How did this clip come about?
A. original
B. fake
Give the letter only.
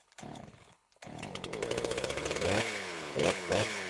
B